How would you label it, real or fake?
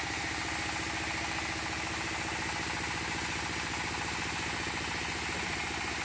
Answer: real